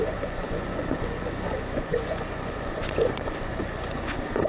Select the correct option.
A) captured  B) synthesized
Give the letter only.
B